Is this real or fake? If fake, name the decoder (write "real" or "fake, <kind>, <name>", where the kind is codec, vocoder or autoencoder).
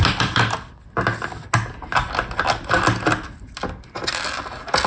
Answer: real